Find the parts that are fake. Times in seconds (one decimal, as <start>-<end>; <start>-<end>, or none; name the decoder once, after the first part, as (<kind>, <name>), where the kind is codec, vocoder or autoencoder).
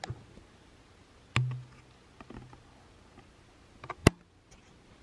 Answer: none